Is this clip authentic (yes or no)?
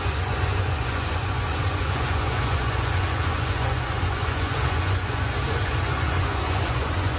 no